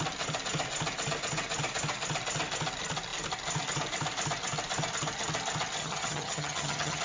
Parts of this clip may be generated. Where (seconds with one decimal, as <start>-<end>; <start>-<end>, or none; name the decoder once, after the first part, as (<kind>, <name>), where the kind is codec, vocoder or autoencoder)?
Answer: 5.8-7.0 (vocoder, HiFi-GAN)